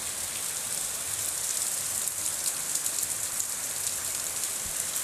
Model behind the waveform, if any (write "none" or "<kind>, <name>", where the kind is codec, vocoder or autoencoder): vocoder, BigVGAN v2